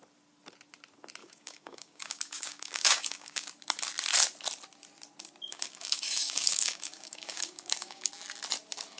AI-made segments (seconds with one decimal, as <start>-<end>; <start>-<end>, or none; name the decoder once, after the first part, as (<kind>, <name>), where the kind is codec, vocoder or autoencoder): 1.2-3.5 (codec, DAC); 5.5-8.1